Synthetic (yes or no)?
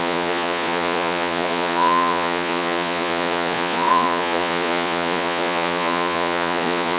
yes